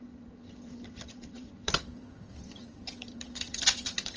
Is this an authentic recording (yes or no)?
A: no